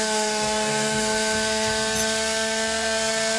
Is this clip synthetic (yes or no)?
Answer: yes